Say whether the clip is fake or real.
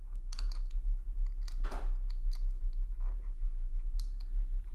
real